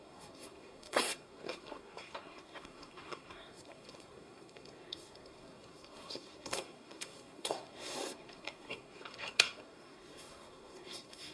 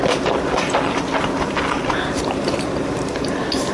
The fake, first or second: first